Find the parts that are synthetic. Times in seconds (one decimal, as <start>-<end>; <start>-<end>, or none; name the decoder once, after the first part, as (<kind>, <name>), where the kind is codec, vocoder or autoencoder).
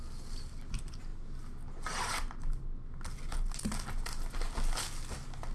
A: none